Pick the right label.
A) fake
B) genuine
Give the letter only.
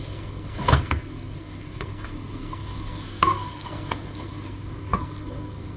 A